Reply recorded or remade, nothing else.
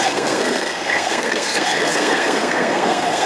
remade